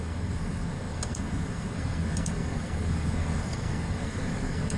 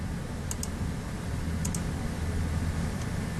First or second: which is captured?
second